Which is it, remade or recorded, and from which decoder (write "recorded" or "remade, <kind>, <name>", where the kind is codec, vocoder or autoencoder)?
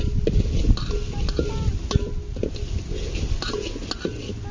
recorded